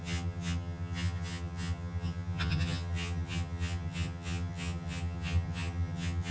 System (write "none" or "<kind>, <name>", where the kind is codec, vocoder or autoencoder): vocoder, HiFi-GAN